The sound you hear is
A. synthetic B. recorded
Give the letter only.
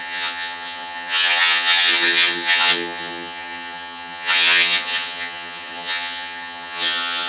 A